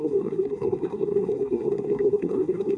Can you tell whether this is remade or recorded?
remade